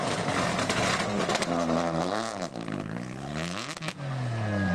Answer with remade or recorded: recorded